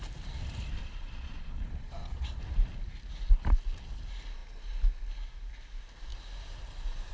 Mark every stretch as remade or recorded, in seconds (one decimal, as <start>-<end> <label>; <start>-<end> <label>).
0.0-0.8 recorded; 0.8-2.4 remade; 2.4-7.1 recorded